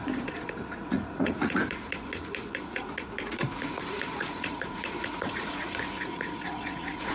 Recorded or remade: remade